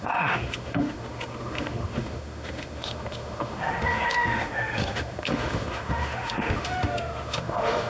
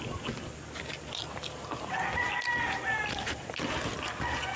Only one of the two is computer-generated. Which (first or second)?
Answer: first